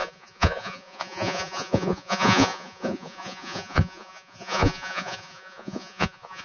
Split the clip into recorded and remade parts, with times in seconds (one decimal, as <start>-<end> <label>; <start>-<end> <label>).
0.0-6.4 remade